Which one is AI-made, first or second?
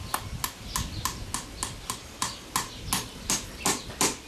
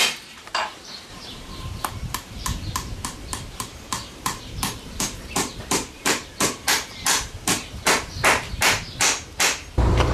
second